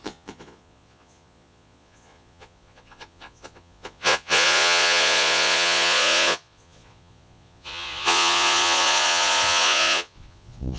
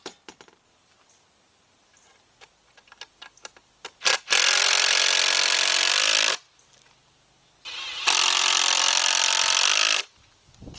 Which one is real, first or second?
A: second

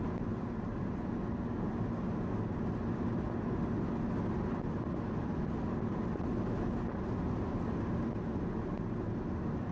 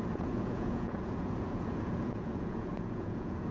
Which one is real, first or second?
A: first